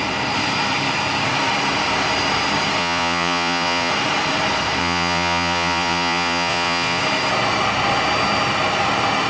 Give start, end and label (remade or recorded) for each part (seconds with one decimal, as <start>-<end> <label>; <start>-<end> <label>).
0.0-2.8 recorded; 2.8-3.9 remade; 3.9-4.8 recorded; 4.8-7.0 remade; 7.0-9.3 recorded